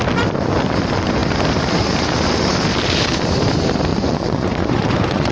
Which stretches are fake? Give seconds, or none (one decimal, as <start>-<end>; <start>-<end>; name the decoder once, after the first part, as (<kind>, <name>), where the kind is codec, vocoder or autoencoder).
3.9-5.3 (vocoder, Vocos)

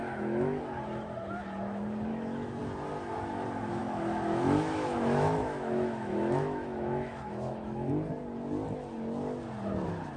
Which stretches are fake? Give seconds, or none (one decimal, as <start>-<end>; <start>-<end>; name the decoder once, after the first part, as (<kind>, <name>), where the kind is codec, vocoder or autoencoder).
0.0-0.6 (autoencoder, DAC-VAE); 2.1-2.6; 3.8-7.9

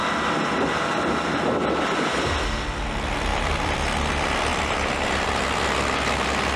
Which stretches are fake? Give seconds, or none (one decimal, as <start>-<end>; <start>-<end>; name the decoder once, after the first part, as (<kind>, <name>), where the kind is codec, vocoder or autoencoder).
3.3-3.8 (vocoder, BigVGAN v2); 4.5-5.3

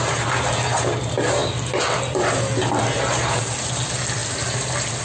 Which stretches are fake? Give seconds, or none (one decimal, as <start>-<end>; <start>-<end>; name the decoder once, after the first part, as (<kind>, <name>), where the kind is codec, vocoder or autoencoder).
none

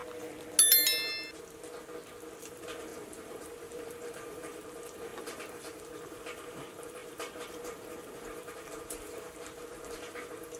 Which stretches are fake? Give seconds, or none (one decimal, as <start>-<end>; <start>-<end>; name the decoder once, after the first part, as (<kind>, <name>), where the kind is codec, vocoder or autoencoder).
2.4-10.6 (vocoder, BigVGAN v2)

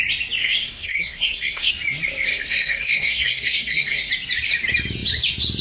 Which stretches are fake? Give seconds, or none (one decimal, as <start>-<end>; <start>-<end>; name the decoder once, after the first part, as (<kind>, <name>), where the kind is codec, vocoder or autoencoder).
0.4-1.7 (codec, SNAC); 2.3-4.1